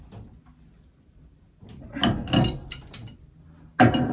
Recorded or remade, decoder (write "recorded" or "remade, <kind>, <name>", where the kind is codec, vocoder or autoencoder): recorded